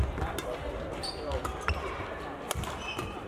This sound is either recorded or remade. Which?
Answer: recorded